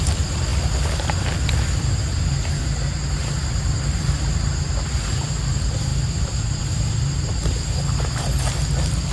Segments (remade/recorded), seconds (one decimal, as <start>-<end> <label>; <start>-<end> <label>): 0.0-9.1 recorded